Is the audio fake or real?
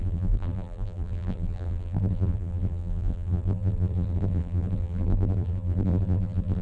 fake